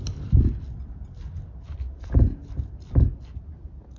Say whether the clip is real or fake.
real